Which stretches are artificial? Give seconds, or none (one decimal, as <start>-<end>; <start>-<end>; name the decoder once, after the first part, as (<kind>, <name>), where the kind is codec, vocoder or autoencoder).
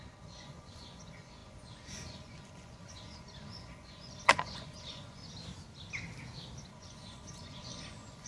0.0-5.2 (vocoder, Vocos); 6.7-8.3